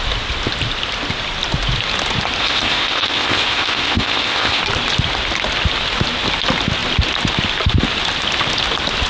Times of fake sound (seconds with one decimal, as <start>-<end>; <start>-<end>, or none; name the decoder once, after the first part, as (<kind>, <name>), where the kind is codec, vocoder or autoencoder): 2.4-4.6 (codec, ZipCodec)